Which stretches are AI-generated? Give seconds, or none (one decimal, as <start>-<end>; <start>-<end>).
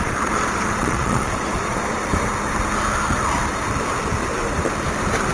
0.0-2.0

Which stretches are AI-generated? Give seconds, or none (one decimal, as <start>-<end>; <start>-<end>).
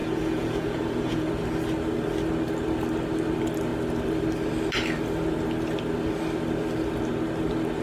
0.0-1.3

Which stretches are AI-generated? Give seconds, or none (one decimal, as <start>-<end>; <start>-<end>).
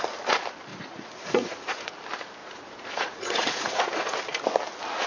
0.7-1.9; 2.4-4.2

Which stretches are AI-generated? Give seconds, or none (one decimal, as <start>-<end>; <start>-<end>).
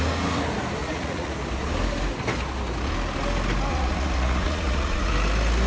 0.8-1.3; 3.7-5.1